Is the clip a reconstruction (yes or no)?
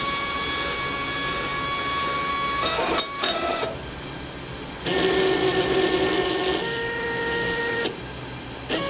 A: no